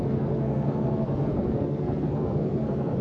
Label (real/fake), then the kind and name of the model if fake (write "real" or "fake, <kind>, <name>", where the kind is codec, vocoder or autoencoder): fake, codec, SNAC